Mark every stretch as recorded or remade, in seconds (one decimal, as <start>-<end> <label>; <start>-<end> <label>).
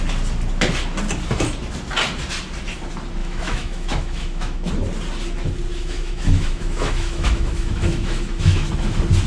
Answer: 0.0-3.2 recorded; 3.2-4.7 remade; 4.7-5.7 recorded; 5.7-8.7 remade; 8.7-9.3 recorded